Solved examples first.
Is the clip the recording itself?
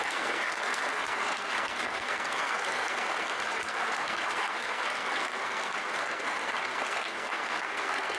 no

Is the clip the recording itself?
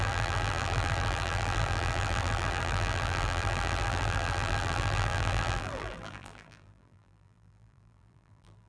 no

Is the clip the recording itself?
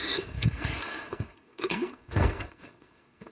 no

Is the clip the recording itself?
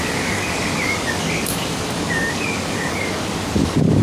no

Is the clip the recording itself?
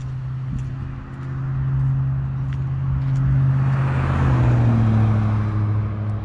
yes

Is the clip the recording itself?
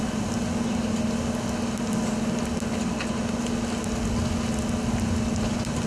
yes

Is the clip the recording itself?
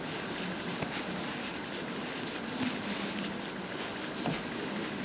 yes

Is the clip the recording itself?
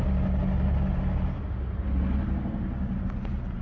yes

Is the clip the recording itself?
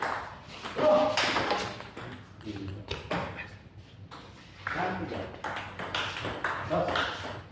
yes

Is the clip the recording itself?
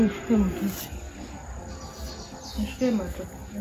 yes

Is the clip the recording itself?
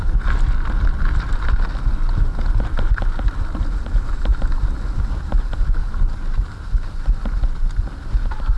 yes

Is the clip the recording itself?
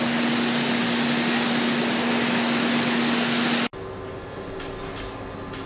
yes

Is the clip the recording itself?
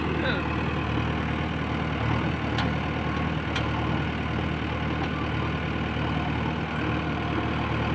yes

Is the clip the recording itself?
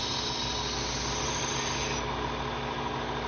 yes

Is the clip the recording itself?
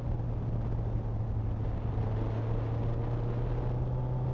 yes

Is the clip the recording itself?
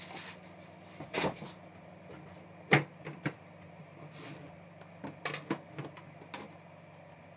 yes